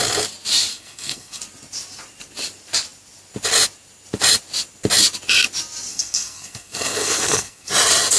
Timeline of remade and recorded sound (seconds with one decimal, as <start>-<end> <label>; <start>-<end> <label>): 0.0-0.7 recorded; 0.7-1.4 remade; 1.4-5.9 recorded; 5.9-7.7 remade; 7.7-8.2 recorded